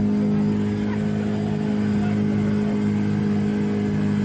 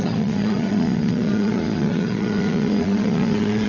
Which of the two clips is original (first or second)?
first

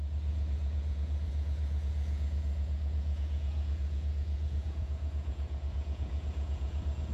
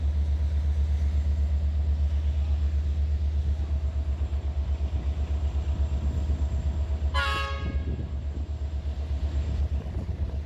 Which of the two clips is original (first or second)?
second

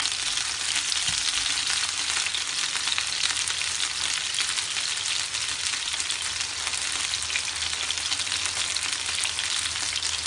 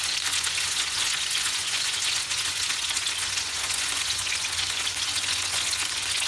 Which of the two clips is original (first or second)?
first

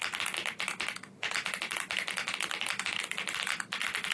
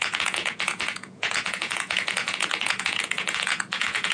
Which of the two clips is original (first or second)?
first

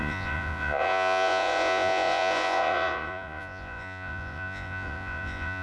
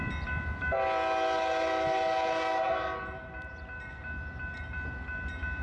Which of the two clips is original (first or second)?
second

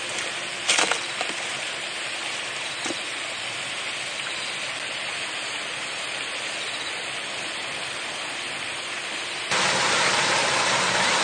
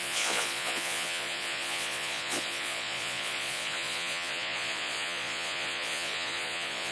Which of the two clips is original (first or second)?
first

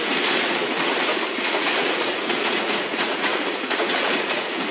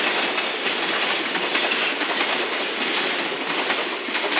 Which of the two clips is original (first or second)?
second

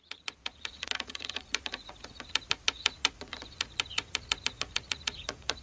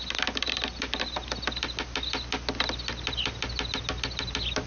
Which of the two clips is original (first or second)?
second